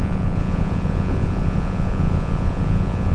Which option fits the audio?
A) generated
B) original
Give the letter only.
A